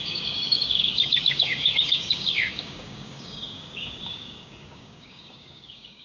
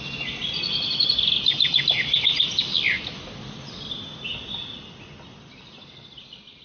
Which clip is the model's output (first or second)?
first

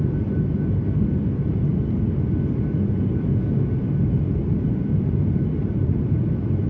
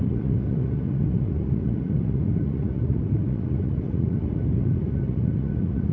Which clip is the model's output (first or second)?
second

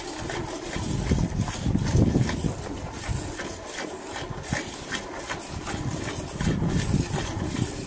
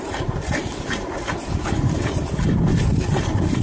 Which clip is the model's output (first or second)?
second